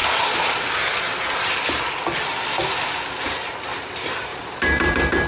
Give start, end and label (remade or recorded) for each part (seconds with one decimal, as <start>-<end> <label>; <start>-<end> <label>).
0.0-4.3 recorded; 4.3-5.3 remade